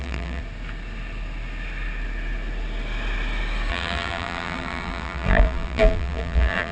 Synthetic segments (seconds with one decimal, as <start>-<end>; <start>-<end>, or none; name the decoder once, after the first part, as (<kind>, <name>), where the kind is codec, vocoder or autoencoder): 0.0-0.4 (vocoder, BigVGAN v2); 3.7-6.7